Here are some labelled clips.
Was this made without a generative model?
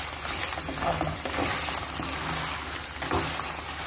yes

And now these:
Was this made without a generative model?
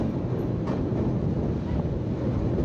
yes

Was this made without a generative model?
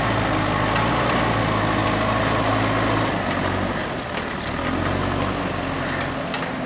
yes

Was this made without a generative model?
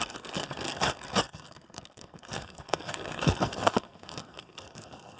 no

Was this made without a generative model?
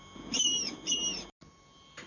yes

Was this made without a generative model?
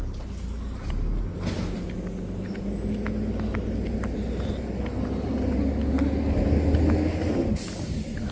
yes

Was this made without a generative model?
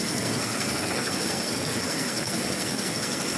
no